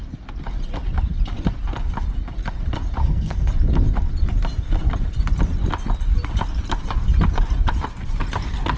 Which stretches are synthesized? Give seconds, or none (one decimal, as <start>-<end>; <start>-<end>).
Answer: 3.0-3.5